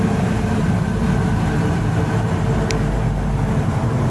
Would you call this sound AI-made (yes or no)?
no